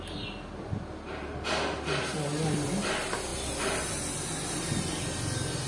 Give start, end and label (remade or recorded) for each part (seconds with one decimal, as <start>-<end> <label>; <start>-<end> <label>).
0.0-5.7 recorded